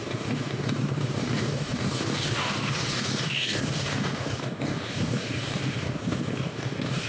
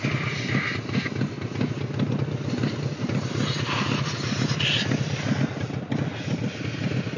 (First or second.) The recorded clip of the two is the second